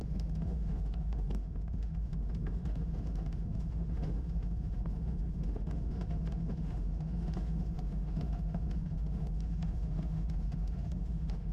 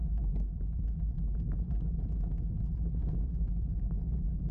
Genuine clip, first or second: second